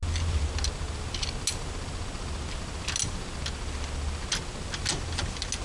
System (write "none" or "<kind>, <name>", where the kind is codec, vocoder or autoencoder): none